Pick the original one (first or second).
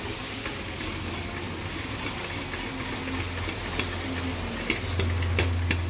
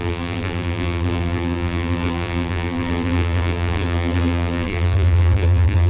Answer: first